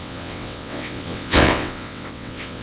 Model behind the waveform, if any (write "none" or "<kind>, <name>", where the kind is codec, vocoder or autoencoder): vocoder, WaveNeXt